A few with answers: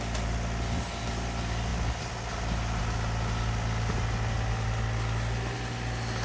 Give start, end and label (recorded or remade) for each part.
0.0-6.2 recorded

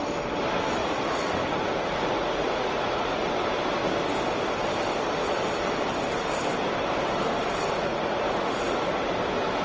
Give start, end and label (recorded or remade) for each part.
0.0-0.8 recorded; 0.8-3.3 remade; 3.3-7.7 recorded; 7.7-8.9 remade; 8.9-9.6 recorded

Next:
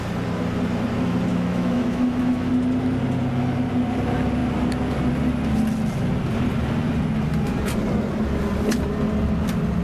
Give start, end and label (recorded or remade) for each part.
0.0-1.3 recorded; 1.3-2.5 remade; 2.5-9.8 recorded